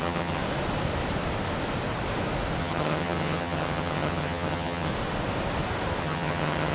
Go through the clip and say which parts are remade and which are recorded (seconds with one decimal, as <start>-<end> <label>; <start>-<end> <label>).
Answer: 0.0-0.4 remade; 0.4-2.6 recorded; 2.6-4.9 remade; 4.9-6.0 recorded; 6.0-6.7 remade